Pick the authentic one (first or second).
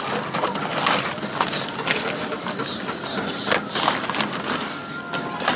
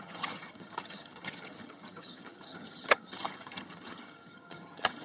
first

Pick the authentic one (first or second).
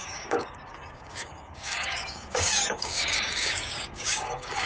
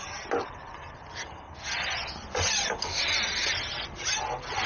second